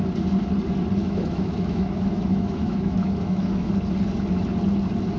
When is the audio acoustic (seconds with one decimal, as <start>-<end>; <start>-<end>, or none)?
0.0-1.0; 3.7-5.2